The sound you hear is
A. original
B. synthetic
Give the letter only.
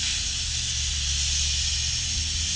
A